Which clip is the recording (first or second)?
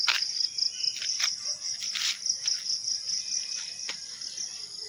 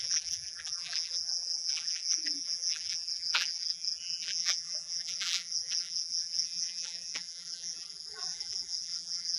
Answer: first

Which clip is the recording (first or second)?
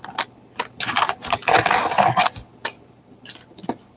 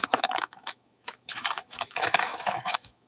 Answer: first